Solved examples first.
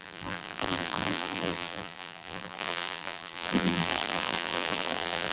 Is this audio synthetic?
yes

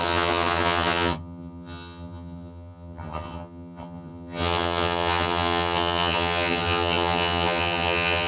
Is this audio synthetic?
yes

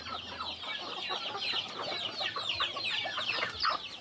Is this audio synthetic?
no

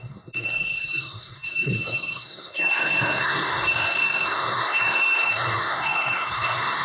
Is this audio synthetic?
yes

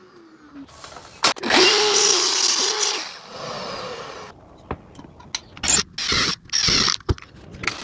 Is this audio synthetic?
no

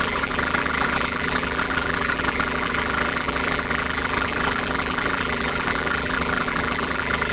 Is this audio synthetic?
yes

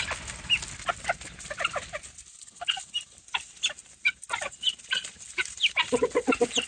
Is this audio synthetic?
no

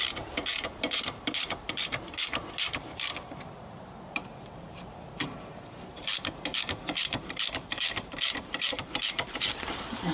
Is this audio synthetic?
yes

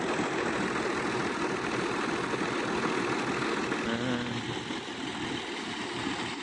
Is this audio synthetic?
no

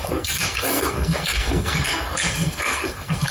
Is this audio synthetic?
yes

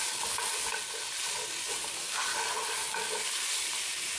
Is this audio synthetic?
no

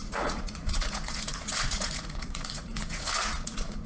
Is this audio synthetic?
yes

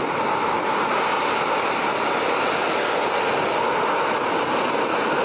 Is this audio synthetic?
no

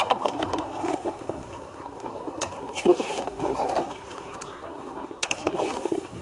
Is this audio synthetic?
yes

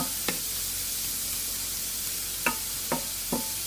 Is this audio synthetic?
no